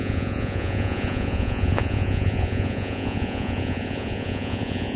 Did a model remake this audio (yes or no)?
yes